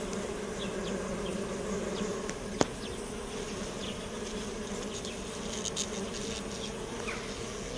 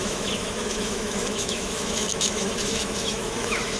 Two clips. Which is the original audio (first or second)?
first